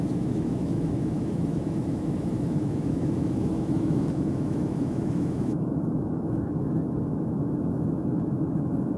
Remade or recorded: remade